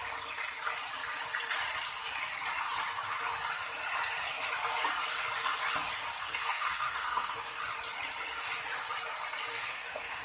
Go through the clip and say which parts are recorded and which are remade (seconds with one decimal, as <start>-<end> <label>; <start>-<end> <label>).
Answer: 0.0-6.2 recorded; 6.2-7.6 remade; 7.6-9.5 recorded; 9.5-10.2 remade